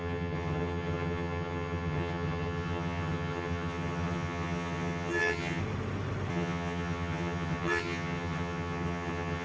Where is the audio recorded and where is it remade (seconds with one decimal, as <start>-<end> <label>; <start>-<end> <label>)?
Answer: 0.0-5.6 remade; 5.6-6.3 recorded; 6.3-9.4 remade